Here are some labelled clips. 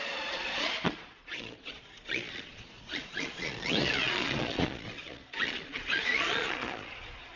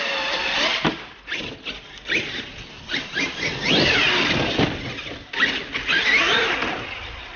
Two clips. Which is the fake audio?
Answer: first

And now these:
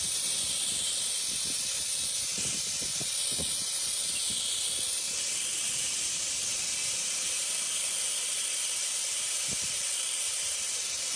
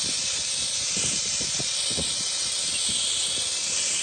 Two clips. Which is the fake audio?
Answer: first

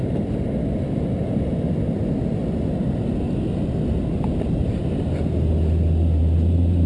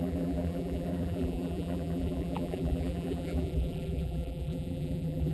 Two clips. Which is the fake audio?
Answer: second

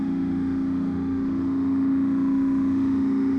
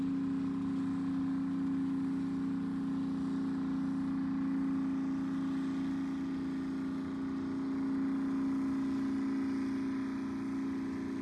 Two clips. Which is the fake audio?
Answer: first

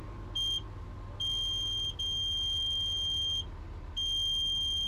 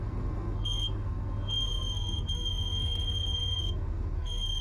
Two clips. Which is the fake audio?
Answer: second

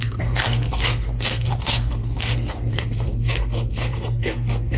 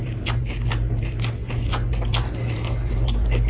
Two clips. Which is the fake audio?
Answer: first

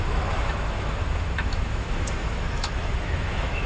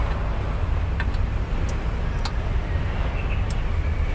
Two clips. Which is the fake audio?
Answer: first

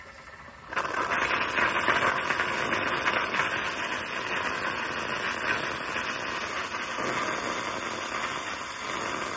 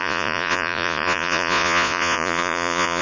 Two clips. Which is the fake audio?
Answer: second